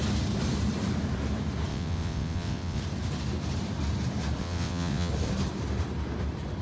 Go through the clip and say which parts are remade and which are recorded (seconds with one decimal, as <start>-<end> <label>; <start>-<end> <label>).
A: 0.0-1.7 recorded; 1.7-2.8 remade; 2.8-4.4 recorded; 4.4-5.1 remade; 5.1-6.6 recorded